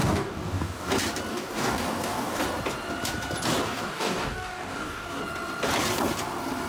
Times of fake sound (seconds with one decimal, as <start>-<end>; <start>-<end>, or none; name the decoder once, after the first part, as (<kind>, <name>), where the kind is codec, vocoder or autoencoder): 0.0-0.9 (codec, DAC); 1.3-2.4; 3.6-5.2